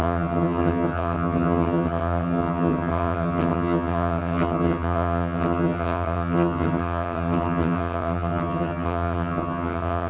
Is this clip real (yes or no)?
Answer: no